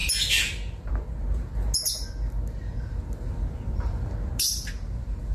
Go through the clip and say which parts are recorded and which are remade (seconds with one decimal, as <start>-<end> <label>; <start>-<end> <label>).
0.0-1.5 remade; 1.5-4.7 recorded; 4.7-5.3 remade